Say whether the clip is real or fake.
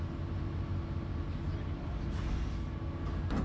real